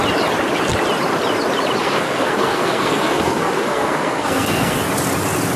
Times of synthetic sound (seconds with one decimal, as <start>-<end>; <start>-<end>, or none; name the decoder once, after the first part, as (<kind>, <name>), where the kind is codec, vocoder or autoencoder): 1.8-4.8 (codec, SNAC)